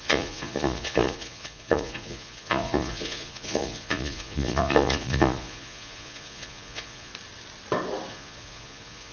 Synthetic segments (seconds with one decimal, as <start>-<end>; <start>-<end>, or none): 0.0-7.1; 8.1-9.1